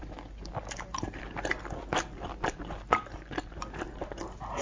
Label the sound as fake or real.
real